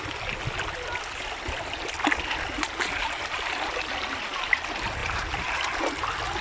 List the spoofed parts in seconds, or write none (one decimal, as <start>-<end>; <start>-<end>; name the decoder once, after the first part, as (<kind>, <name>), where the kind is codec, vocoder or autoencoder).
5.0-5.8 (vocoder, BigVGAN v2)